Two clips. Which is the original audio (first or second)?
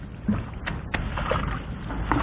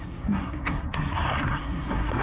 first